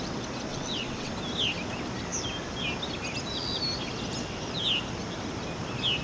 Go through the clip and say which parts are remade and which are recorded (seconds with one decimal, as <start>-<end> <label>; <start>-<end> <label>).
0.0-0.5 recorded; 0.5-1.1 remade; 1.1-6.0 recorded